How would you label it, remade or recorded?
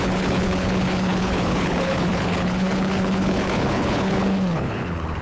remade